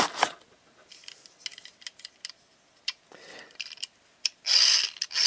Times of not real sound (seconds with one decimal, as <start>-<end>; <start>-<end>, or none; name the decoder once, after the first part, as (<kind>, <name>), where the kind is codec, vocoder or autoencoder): none